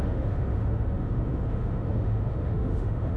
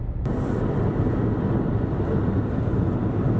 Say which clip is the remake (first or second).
first